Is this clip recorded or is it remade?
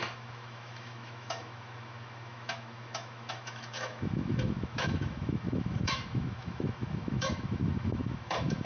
remade